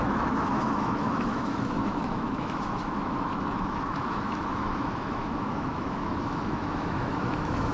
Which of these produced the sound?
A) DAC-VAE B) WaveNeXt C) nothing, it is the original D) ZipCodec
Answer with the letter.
A